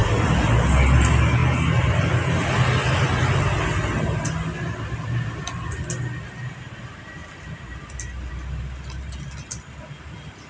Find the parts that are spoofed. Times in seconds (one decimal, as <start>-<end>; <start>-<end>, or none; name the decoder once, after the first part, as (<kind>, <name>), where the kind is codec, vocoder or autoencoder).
0.0-0.7 (vocoder, BigVGAN v2); 7.2-8.3